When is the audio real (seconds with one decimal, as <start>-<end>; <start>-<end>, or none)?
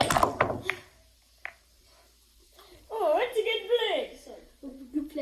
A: 0.0-5.2